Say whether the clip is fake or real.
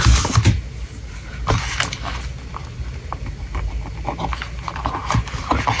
real